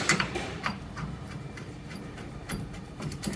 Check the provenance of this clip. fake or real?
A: fake